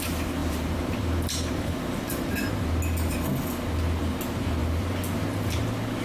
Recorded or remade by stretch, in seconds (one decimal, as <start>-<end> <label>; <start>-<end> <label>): 0.0-0.4 recorded; 0.4-2.3 remade; 2.3-6.0 recorded